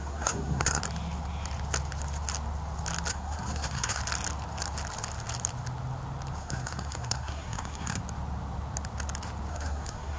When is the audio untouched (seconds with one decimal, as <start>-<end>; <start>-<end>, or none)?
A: 0.8-3.1; 4.0-6.4; 8.0-9.5